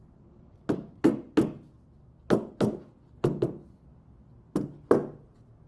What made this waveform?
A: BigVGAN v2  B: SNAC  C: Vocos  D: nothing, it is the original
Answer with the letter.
D